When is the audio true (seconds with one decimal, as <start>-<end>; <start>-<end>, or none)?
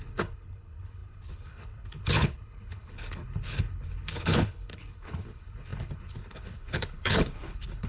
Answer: none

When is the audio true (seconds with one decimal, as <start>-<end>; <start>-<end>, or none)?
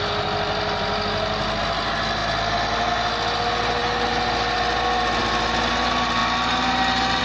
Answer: 0.0-7.2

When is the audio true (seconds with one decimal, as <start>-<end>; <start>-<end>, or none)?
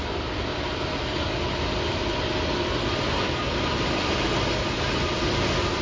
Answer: 0.0-0.5; 1.0-5.8